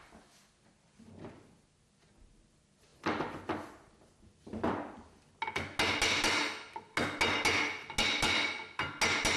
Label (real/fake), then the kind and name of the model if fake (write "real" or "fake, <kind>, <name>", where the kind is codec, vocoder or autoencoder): real